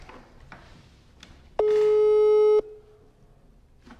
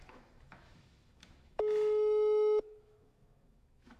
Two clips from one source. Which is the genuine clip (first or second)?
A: first